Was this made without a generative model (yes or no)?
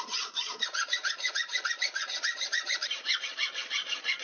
no